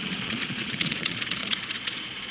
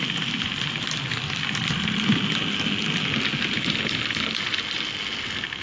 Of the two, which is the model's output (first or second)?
first